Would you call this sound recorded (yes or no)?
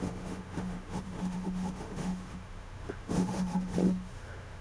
no